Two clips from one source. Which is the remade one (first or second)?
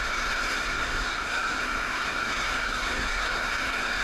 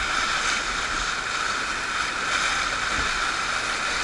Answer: first